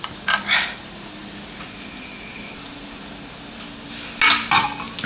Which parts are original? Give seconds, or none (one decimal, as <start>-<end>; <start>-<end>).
0.0-2.3; 3.0-5.1